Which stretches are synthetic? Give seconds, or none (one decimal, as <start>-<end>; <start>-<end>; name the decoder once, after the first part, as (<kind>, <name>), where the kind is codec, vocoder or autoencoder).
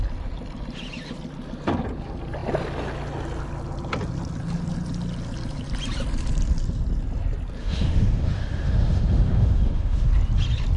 7.6-10.1 (autoencoder, DAC-VAE)